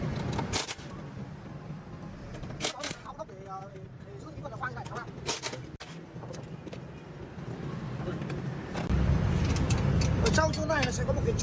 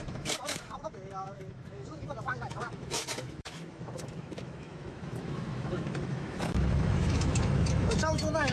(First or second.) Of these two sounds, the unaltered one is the first